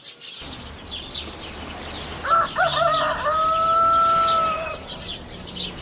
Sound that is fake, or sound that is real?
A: real